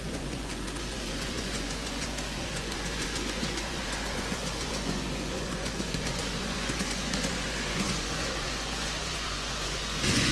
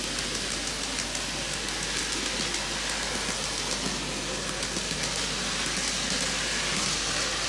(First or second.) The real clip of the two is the second